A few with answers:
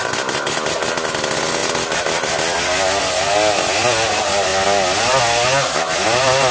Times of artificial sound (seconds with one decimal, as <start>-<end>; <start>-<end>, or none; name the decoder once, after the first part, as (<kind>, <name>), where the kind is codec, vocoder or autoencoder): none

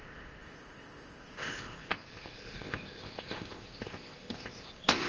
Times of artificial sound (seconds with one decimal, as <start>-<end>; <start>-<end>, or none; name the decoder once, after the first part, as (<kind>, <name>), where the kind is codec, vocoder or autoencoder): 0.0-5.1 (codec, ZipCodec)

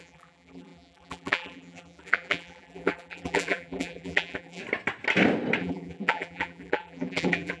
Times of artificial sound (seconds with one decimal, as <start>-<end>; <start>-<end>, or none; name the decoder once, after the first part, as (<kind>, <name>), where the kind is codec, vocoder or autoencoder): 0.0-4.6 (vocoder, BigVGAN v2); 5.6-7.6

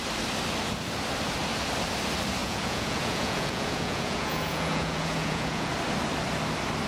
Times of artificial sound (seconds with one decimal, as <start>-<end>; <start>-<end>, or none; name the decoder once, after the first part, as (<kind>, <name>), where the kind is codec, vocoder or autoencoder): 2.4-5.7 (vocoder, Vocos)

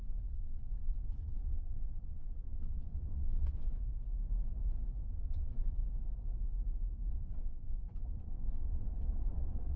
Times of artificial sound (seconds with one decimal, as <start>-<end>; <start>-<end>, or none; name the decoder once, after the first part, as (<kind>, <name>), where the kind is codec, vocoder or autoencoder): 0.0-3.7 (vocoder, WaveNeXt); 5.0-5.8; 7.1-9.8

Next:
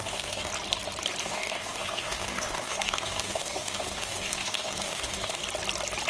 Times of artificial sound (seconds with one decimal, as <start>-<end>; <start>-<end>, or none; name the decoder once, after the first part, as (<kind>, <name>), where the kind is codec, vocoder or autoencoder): 0.0-0.5 (codec, DAC); 1.2-5.4

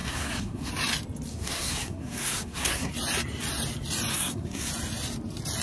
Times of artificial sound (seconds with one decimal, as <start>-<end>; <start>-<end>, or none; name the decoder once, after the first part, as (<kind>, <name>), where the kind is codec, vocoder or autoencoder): 0.0-0.7 (codec, SNAC); 1.3-2.9; 4.1-4.7

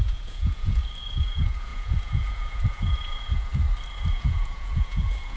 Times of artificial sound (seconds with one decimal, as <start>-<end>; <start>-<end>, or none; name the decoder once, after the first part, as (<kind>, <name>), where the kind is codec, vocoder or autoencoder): 0.0-3.5 (vocoder, Vocos); 4.1-5.4